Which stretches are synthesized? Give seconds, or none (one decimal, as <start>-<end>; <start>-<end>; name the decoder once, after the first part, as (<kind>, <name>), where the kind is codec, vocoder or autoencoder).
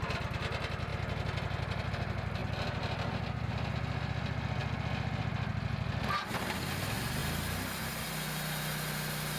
none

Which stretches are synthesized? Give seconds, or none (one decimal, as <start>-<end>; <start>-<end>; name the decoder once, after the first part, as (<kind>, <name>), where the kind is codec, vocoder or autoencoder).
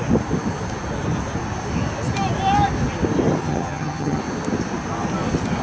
3.4-4.2 (vocoder, HiFi-GAN)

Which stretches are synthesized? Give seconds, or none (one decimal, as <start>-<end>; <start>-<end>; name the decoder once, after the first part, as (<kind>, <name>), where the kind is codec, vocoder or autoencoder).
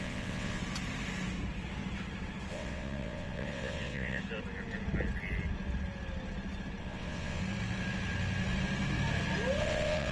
0.0-0.6 (vocoder, WaveNeXt); 2.5-4.2; 6.8-7.4; 9.6-10.1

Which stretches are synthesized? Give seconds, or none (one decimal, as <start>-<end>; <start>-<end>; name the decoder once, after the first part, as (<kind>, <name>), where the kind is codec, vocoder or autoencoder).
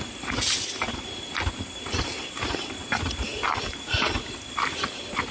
none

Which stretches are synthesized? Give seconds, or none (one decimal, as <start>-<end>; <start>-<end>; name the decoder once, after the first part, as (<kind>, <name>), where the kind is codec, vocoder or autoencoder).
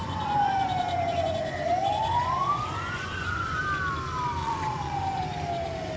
0.0-3.6 (vocoder, Vocos); 4.4-5.2